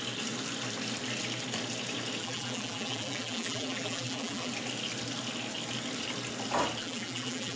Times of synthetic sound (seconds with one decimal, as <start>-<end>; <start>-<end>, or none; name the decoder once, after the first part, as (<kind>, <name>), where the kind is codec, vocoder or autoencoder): 2.2-4.5 (vocoder, BigVGAN v2); 6.8-7.6